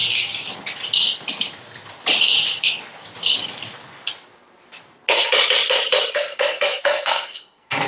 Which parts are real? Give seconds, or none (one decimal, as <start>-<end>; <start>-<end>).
0.0-6.4